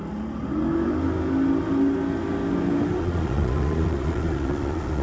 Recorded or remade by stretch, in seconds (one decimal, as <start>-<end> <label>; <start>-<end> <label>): 0.0-3.0 recorded; 3.0-5.0 remade

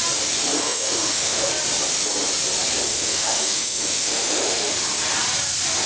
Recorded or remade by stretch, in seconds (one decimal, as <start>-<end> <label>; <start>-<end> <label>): 0.0-0.6 recorded; 0.6-1.5 remade; 1.5-2.9 recorded; 2.9-4.7 remade; 4.7-5.9 recorded

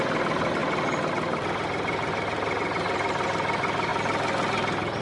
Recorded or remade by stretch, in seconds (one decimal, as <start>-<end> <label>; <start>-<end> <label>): 0.0-5.0 recorded

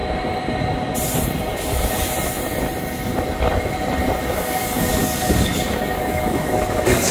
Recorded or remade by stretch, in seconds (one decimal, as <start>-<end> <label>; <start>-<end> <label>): 0.0-4.3 recorded; 4.3-7.1 remade

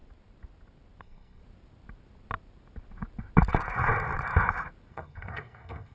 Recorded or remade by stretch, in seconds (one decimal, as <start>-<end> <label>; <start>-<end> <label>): 0.0-1.0 recorded; 1.0-1.4 remade; 1.4-4.9 recorded; 4.9-5.9 remade